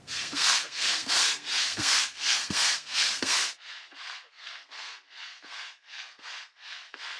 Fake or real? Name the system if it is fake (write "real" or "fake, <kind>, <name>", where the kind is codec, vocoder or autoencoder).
fake, codec, SNAC